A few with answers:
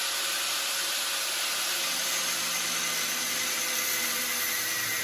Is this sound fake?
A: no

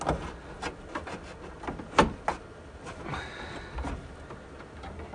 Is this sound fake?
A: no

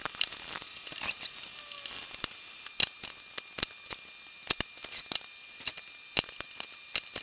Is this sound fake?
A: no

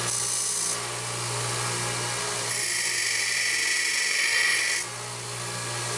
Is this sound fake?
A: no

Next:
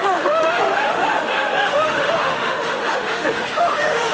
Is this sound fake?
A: yes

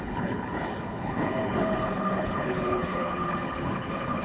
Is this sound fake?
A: yes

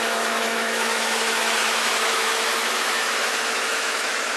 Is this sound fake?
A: yes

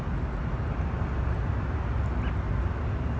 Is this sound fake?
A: no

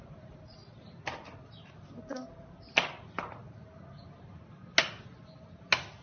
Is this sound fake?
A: no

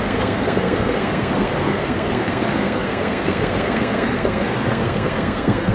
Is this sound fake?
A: yes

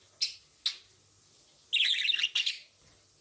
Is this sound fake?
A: no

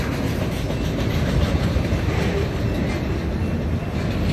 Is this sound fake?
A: no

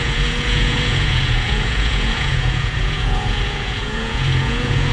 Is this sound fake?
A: yes